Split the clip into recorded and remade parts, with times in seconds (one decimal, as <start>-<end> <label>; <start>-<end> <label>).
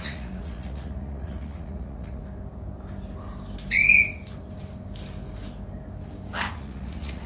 0.0-2.2 remade; 2.2-6.6 recorded; 6.6-7.3 remade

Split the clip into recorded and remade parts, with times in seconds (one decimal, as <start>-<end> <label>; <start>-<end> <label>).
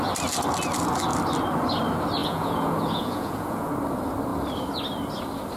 0.0-2.2 recorded; 2.2-3.7 remade; 3.7-5.6 recorded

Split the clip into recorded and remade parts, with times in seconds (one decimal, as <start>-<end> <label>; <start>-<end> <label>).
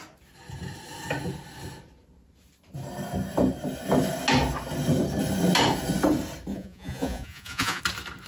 0.0-6.5 recorded; 6.5-7.8 remade; 7.8-8.3 recorded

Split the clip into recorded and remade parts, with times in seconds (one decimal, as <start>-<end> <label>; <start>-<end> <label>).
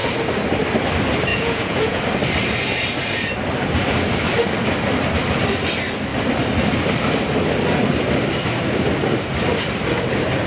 0.0-1.3 recorded; 1.3-2.0 remade; 2.0-10.5 recorded